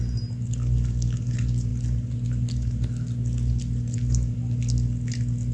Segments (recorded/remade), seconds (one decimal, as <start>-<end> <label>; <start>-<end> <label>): 0.0-5.5 recorded